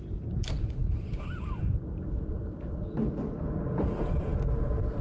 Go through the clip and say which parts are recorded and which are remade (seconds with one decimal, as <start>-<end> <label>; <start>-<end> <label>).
0.0-5.0 recorded